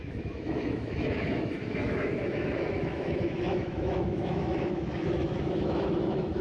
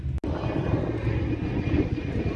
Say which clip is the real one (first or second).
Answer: second